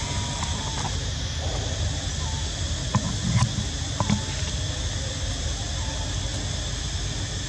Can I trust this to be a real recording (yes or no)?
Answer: yes